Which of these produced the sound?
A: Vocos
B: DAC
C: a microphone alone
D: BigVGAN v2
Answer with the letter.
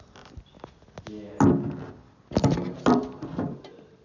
C